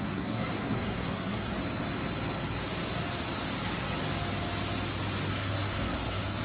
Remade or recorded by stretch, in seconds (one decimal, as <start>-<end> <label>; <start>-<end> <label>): 0.0-1.5 remade; 1.5-5.3 recorded; 5.3-6.4 remade